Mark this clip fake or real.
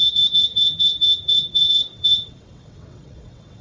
fake